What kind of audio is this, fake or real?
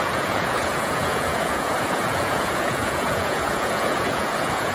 fake